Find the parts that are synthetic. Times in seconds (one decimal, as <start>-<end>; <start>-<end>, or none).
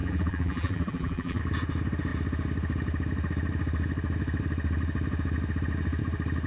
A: 0.0-1.4